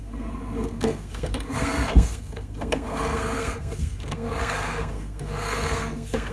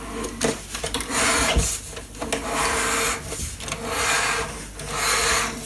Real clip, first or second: second